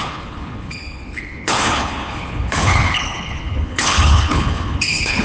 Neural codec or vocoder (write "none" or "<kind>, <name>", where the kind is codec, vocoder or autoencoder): codec, HILCodec